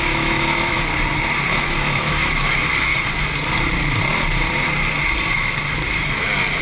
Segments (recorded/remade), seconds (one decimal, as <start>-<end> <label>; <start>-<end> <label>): 0.0-0.9 remade; 0.9-1.6 recorded; 1.6-2.9 remade; 2.9-6.6 recorded